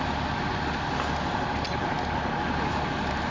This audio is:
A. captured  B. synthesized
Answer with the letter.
A